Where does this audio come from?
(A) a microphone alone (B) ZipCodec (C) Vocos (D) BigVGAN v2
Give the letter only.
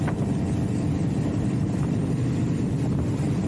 D